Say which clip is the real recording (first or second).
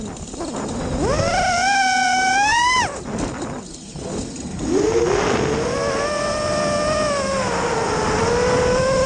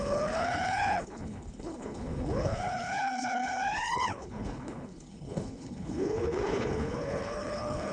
first